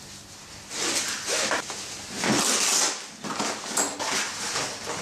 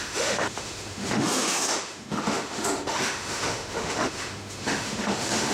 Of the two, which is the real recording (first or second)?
first